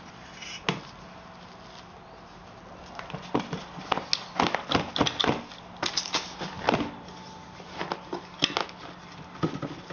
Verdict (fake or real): real